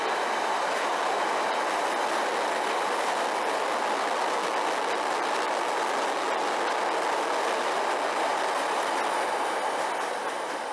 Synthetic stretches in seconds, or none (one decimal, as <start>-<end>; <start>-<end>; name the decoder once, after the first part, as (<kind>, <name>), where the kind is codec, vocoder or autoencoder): none